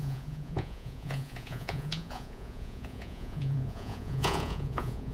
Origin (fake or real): fake